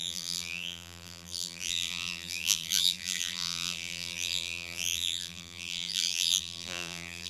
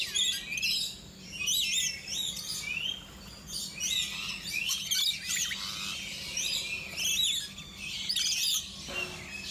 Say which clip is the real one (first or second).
second